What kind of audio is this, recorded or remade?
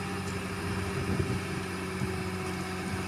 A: recorded